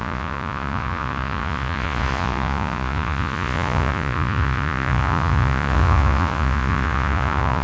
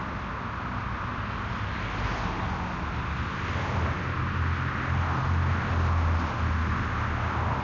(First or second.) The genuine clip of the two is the second